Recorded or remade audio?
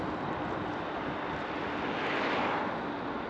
recorded